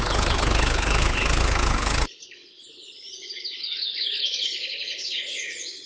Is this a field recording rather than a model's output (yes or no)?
no